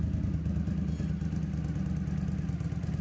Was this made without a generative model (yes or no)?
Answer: yes